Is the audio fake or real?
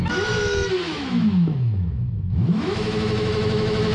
fake